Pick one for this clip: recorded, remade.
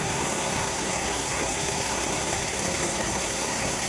remade